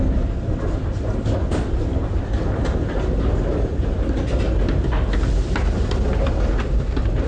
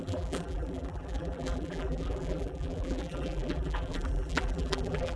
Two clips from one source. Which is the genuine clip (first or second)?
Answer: first